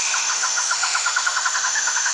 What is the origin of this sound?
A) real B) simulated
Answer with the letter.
B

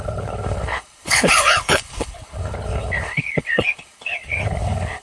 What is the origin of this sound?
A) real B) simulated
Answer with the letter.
B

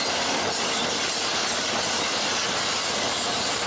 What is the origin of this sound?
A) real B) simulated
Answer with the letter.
A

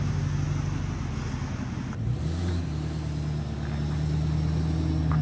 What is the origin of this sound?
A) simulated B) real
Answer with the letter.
B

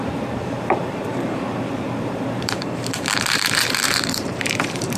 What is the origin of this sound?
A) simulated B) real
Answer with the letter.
A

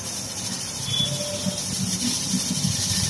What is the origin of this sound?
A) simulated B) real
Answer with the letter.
B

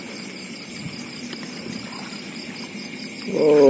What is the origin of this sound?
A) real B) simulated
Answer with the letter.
A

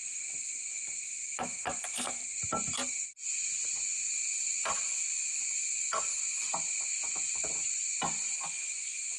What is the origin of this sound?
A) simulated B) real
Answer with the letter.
B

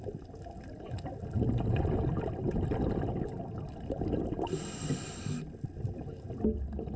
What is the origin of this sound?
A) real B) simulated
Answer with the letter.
A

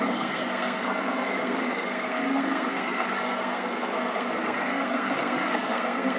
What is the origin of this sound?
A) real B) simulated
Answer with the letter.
B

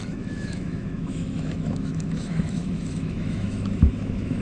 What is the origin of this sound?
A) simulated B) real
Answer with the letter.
A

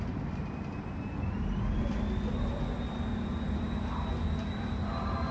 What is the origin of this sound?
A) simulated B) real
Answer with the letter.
B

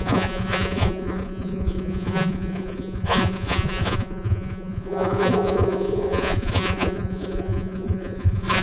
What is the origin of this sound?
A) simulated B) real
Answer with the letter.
A